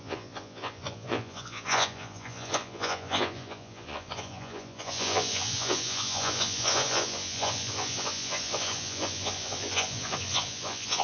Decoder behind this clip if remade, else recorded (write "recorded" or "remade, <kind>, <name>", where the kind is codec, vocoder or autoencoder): remade, vocoder, Vocos